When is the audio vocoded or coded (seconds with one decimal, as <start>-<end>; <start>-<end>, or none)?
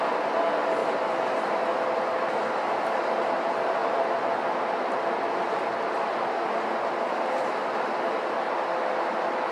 none